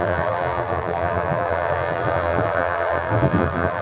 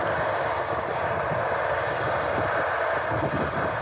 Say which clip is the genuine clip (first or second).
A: second